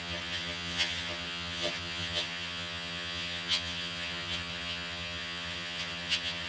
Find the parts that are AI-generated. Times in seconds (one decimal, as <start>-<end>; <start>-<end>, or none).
0.0-6.5